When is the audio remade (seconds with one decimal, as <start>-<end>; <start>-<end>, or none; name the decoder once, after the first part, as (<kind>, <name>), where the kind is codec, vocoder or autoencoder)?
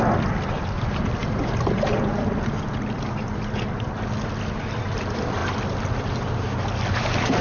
none